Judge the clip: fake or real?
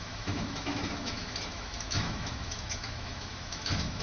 fake